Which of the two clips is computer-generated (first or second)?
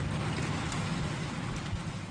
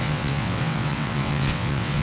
second